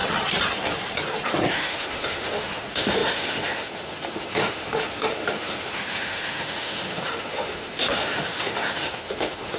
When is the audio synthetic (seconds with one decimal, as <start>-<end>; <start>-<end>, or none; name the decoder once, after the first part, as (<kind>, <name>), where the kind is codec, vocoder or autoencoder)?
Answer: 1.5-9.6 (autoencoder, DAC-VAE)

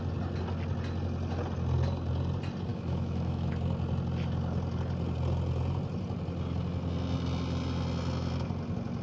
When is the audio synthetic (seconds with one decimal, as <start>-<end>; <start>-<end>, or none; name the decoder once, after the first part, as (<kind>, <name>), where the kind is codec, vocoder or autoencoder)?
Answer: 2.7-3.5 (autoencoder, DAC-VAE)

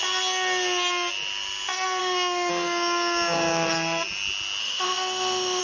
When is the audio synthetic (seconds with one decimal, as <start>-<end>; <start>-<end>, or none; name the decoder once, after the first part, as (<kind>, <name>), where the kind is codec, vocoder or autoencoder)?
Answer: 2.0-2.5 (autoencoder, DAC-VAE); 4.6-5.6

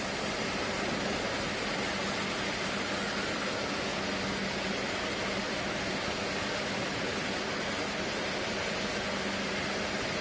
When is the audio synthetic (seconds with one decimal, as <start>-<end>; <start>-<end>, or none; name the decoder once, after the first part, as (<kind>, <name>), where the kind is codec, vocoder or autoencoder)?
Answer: none

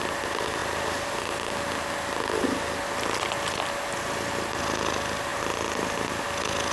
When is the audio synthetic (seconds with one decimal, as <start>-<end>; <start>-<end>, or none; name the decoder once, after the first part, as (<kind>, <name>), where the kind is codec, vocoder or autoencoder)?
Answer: none

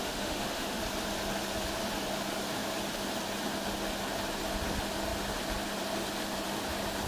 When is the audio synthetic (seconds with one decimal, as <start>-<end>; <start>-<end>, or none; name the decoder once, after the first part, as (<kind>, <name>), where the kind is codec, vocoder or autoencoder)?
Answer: 0.0-0.8 (autoencoder, DAC-VAE)

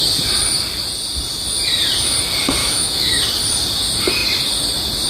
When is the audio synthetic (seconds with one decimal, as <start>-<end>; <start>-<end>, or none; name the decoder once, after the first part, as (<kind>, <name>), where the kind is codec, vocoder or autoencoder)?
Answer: 2.6-3.2 (autoencoder, DAC-VAE)